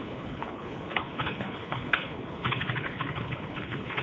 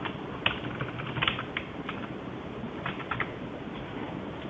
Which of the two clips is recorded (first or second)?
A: second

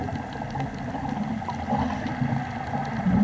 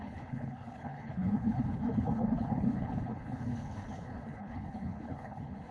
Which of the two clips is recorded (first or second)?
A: first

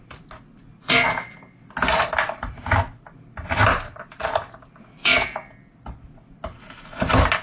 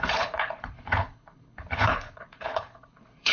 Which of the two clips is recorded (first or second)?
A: first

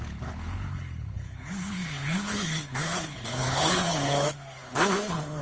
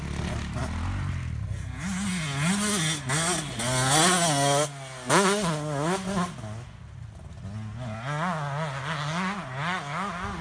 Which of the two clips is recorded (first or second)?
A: second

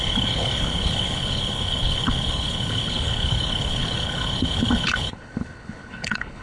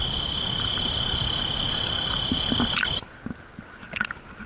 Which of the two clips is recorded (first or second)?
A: second